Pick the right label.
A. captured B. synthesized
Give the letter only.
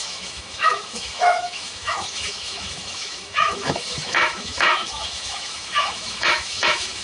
B